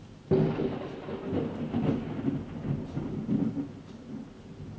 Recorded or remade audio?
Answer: recorded